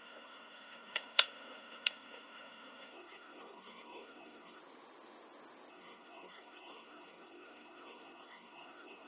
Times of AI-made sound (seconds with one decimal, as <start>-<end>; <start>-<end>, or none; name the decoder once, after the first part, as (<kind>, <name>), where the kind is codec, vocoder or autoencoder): 0.0-4.6 (codec, SNAC); 5.7-9.1